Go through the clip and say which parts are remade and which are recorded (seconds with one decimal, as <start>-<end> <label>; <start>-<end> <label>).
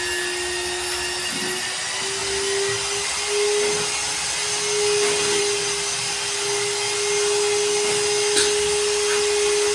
0.0-9.7 recorded